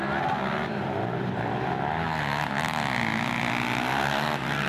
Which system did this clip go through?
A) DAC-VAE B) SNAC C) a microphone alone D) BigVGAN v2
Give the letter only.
C